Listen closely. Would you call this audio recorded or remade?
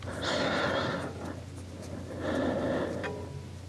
recorded